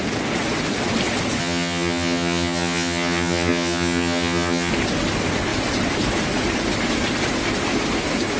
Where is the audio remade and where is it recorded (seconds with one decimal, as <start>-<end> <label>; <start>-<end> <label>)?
0.0-1.4 recorded; 1.4-4.7 remade; 4.7-8.4 recorded